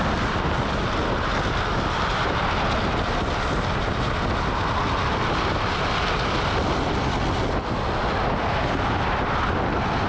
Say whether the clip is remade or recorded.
recorded